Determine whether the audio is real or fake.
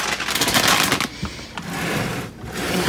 real